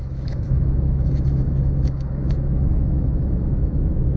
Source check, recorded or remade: remade